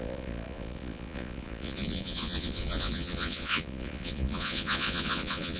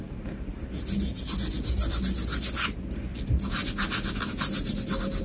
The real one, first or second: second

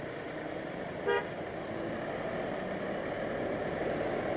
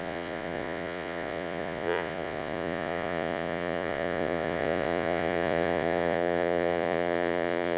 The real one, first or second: first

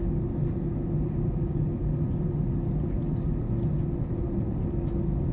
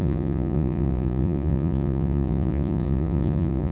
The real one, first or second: first